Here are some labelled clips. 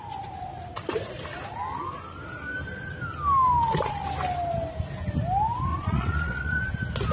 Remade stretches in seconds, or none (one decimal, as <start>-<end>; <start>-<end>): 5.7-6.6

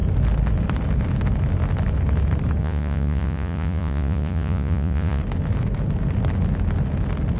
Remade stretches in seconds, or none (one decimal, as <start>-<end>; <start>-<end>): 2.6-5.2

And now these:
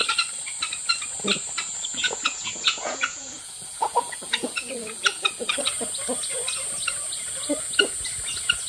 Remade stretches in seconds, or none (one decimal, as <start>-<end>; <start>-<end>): 1.9-5.6